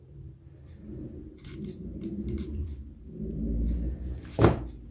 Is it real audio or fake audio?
fake